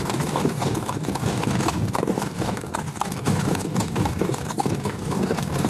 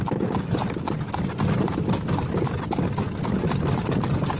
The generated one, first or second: first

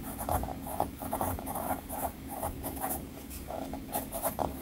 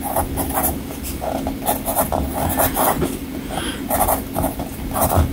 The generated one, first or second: first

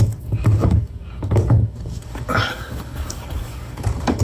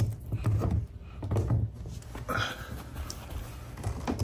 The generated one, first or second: first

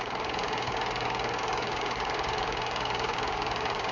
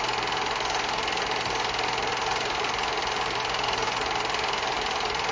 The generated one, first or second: first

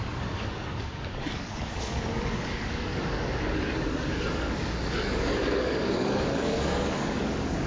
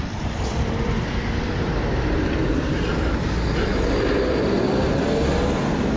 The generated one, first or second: first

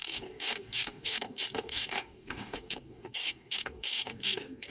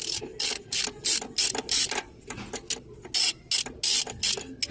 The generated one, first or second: first